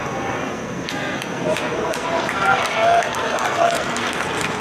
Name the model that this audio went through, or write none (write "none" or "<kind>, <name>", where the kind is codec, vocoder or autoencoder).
codec, SNAC